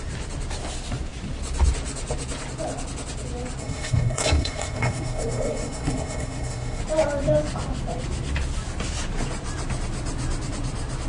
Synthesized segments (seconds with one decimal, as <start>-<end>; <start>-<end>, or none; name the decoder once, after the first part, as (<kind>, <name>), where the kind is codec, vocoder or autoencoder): 3.6-6.8 (codec, SNAC)